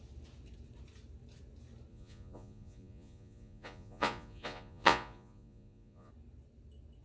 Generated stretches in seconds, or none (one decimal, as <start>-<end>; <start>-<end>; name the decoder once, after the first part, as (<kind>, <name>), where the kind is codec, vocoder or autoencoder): 1.9-6.1 (vocoder, Vocos)